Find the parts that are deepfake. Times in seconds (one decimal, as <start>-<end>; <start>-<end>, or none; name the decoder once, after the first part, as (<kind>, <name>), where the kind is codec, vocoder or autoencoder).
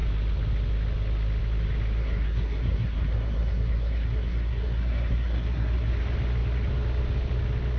2.0-5.9 (codec, SNAC)